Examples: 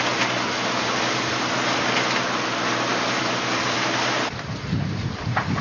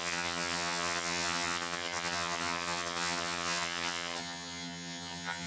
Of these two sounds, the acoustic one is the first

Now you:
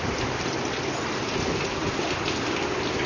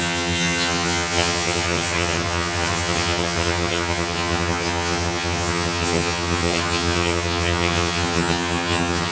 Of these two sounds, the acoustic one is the first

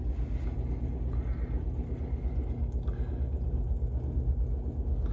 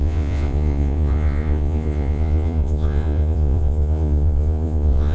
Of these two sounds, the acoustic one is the first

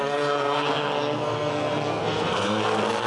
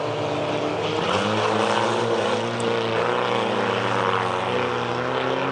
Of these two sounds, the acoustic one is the second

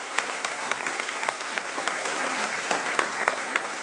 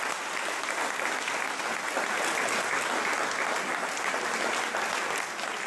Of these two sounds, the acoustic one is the second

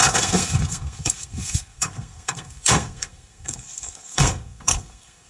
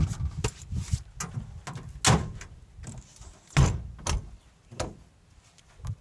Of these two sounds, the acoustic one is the second